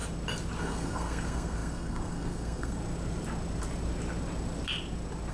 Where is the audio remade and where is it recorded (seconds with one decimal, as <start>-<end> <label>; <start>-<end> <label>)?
0.0-0.6 recorded; 0.6-2.8 remade; 2.8-5.3 recorded